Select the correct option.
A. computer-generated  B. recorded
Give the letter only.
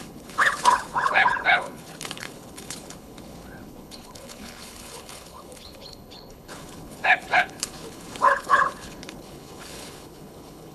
A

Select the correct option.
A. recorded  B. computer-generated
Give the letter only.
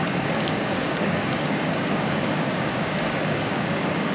B